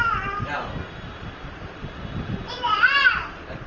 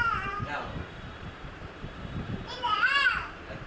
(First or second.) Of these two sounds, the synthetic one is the second